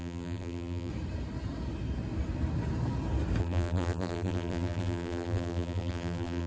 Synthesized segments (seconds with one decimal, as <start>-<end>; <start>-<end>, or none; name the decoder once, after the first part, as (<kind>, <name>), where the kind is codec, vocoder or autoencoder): 0.0-0.9 (vocoder, BigVGAN v2); 3.4-6.5